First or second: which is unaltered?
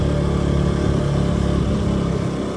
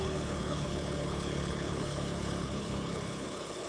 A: first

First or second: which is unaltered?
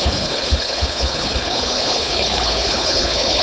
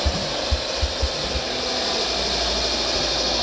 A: second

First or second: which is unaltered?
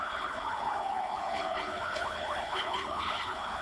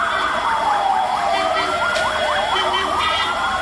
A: second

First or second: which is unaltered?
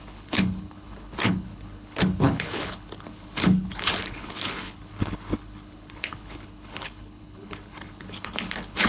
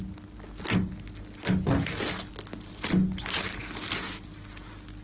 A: second